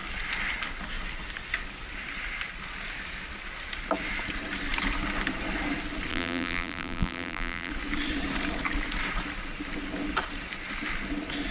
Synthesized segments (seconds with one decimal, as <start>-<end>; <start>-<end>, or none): 6.1-7.7

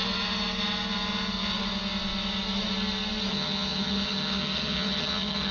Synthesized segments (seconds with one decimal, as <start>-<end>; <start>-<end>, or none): 3.3-5.5

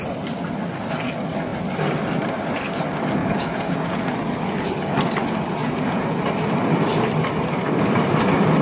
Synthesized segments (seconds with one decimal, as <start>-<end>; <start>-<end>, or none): 3.2-4.0; 5.6-6.2

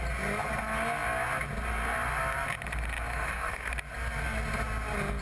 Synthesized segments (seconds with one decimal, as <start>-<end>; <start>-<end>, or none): 3.1-3.7

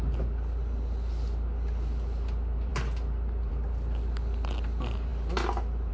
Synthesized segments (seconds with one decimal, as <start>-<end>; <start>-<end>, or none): none

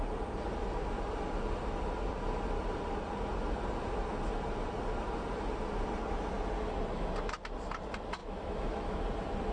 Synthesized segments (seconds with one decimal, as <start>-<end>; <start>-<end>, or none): 8.2-9.0